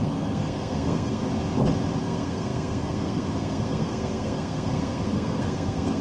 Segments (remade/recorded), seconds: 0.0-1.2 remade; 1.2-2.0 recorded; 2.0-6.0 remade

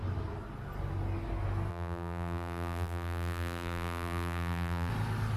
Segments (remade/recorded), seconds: 0.0-1.7 recorded; 1.7-4.9 remade; 4.9-5.4 recorded

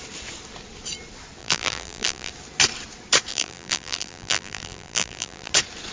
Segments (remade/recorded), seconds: 0.0-1.4 recorded; 1.4-2.3 remade; 2.3-3.3 recorded; 3.3-5.5 remade; 5.5-5.9 recorded

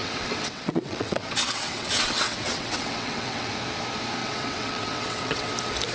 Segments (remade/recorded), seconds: 0.0-3.5 remade; 3.5-4.2 recorded; 4.2-5.5 remade; 5.5-5.9 recorded

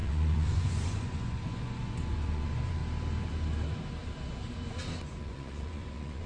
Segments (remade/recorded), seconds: 0.0-2.8 remade; 2.8-5.0 recorded; 5.0-6.3 remade

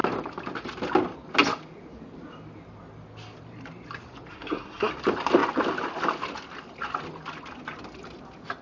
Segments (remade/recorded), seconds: 0.0-4.3 recorded; 4.3-4.9 remade; 4.9-8.6 recorded